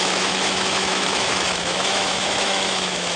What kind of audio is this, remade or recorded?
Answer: remade